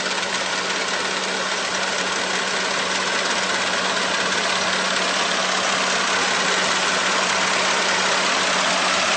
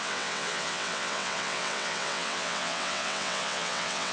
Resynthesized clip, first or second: second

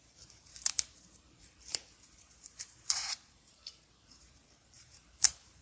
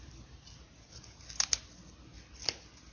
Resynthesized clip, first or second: first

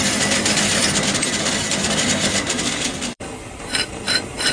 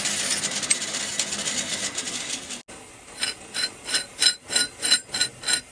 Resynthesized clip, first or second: first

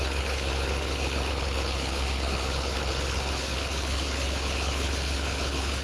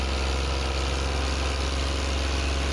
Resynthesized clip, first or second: first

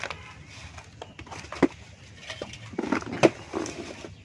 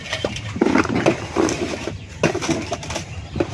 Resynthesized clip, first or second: second